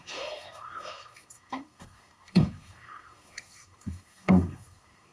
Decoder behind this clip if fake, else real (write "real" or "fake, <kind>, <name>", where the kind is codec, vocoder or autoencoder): fake, codec, SNAC